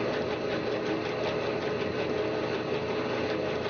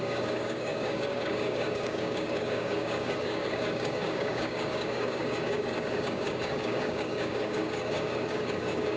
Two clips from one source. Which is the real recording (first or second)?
first